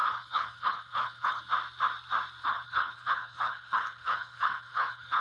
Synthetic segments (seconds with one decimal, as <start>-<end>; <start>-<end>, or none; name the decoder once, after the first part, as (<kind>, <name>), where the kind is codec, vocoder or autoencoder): 0.0-1.4 (codec, HILCodec); 2.4-5.2